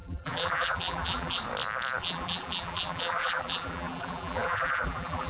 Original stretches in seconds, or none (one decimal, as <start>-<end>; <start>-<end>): 1.4-2.0